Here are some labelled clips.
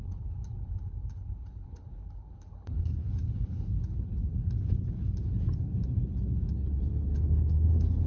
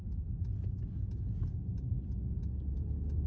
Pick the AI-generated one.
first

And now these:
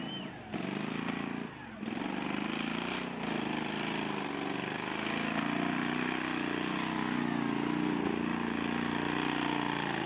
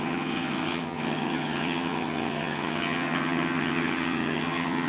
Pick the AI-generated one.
second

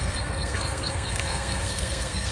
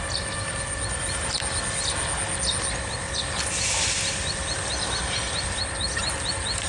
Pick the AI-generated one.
first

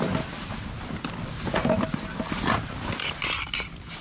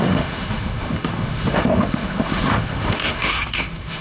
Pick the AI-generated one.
second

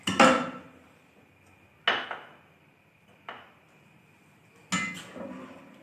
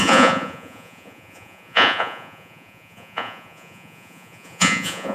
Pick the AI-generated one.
second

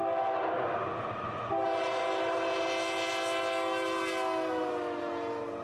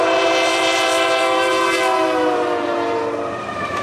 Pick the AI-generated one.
second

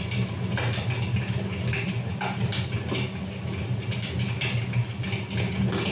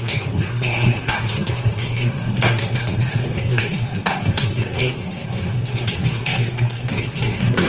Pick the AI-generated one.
second